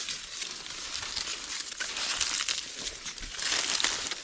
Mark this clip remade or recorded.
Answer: recorded